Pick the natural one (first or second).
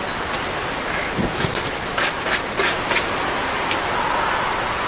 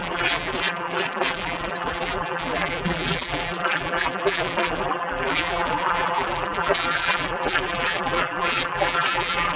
first